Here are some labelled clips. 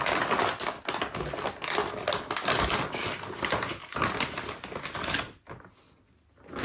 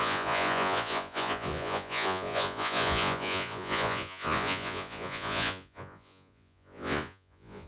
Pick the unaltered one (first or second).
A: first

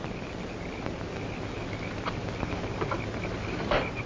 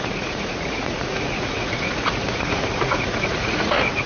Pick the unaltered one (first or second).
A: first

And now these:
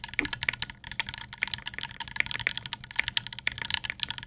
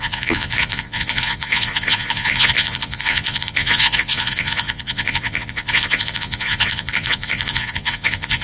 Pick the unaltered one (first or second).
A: first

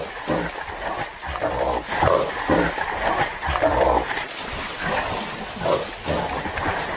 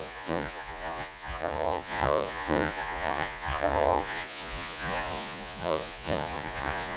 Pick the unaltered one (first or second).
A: first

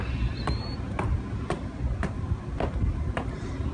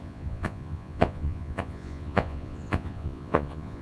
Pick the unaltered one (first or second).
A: first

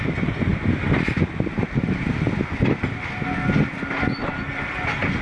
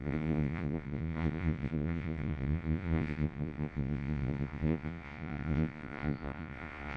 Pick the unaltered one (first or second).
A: first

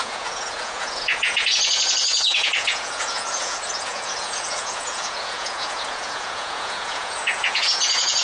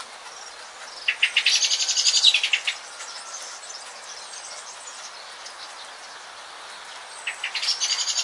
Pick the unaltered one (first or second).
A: second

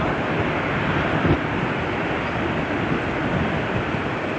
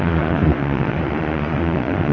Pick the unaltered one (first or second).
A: first